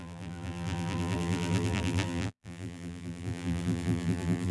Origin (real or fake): fake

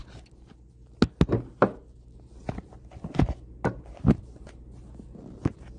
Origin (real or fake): real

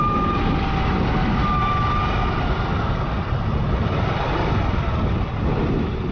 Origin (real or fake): real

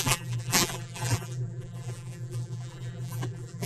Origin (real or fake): fake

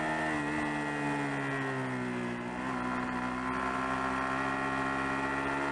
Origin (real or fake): real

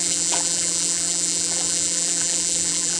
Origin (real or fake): fake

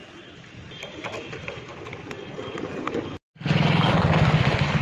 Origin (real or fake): real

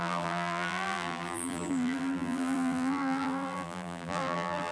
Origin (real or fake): fake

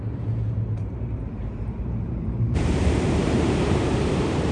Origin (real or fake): fake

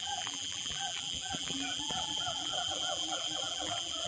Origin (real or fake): fake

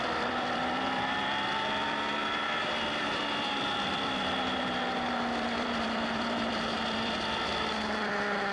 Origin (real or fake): fake